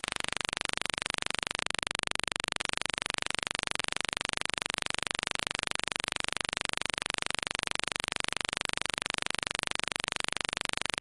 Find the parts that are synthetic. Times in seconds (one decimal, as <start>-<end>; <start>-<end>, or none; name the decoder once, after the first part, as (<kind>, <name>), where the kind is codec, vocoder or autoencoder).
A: 1.6-2.6 (vocoder, BigVGAN v2)